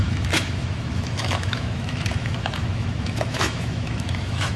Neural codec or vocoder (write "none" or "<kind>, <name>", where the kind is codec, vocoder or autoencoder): autoencoder, DAC-VAE